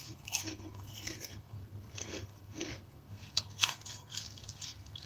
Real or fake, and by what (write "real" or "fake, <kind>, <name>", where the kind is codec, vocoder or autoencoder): fake, codec, SNAC